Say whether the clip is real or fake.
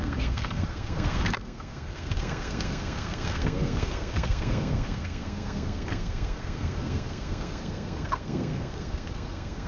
fake